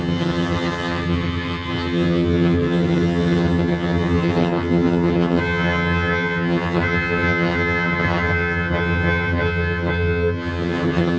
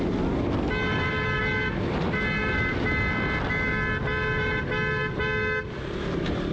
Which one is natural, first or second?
second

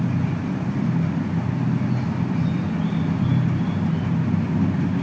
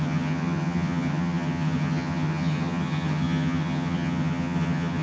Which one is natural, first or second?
first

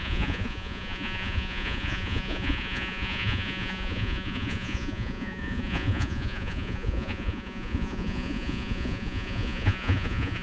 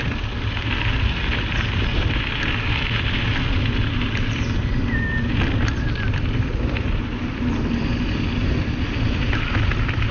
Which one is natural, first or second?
second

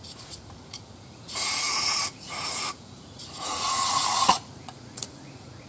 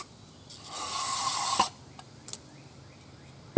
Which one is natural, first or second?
second